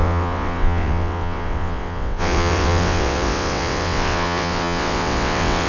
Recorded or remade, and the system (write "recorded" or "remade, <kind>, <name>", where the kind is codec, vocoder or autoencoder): remade, vocoder, WaveNeXt